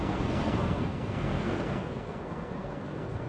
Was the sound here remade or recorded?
remade